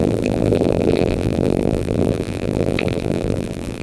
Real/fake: fake